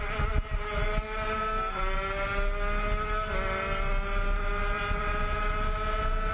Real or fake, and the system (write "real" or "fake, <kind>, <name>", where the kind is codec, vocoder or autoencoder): real